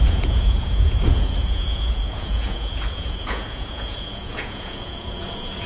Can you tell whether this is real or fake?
fake